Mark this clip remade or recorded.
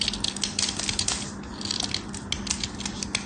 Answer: recorded